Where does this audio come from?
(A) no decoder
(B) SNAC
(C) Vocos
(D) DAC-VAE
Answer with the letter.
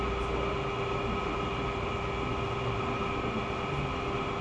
A